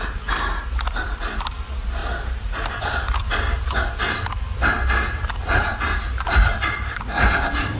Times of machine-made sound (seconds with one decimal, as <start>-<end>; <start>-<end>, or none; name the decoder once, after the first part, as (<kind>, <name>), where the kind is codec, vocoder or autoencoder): 0.0-5.7 (vocoder, BigVGAN v2); 6.5-7.8